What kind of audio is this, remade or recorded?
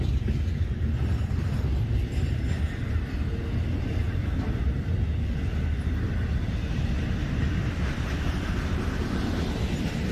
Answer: recorded